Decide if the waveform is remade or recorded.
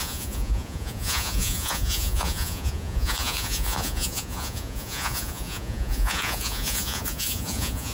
remade